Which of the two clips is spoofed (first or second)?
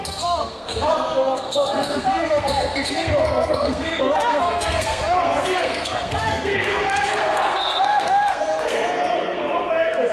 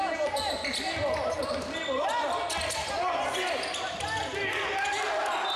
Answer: first